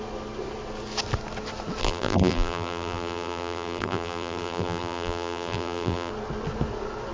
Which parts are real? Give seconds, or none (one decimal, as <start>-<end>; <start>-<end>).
0.0-1.8; 6.1-7.1